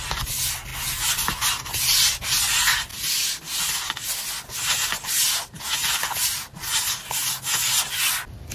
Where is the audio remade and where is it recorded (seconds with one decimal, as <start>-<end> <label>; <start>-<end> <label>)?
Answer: 0.0-8.5 recorded